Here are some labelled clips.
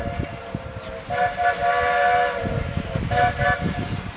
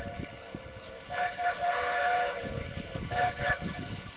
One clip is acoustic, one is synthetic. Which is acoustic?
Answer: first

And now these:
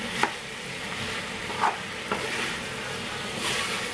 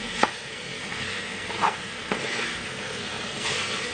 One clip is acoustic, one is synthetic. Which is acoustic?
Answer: first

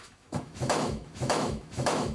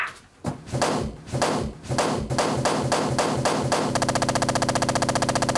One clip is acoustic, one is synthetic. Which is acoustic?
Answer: second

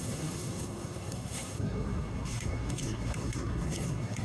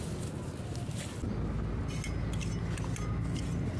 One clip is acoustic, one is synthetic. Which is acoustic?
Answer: second